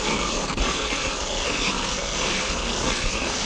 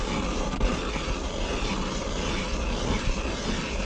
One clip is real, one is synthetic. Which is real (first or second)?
second